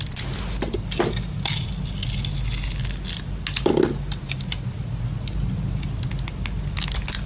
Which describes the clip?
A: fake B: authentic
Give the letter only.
B